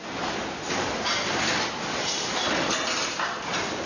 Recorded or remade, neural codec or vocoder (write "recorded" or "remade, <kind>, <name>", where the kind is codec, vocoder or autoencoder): recorded